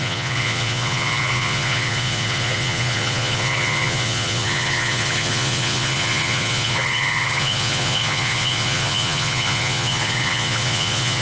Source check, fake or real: fake